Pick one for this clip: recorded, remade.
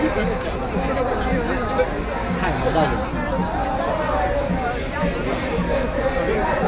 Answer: recorded